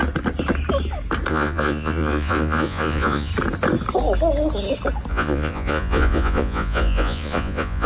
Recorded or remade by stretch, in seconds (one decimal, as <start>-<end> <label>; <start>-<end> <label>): 0.0-1.3 recorded; 1.3-3.3 remade; 3.3-5.1 recorded; 5.1-7.9 remade